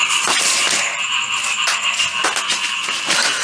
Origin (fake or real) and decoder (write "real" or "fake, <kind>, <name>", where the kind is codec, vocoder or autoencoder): real